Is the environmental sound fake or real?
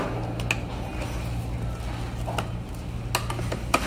real